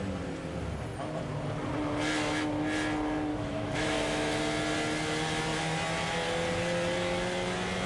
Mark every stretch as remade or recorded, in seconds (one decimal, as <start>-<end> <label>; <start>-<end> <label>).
0.0-3.3 recorded; 3.3-4.4 remade; 4.4-7.9 recorded